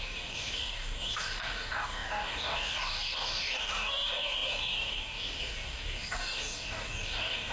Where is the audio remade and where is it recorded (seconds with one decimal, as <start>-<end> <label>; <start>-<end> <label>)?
0.0-7.5 remade